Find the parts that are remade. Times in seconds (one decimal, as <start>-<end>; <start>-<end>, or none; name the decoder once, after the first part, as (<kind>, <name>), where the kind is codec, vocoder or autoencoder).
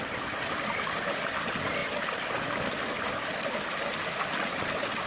none